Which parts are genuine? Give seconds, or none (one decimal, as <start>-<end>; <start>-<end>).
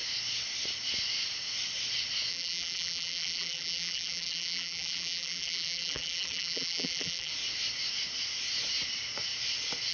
0.0-2.3; 7.3-9.9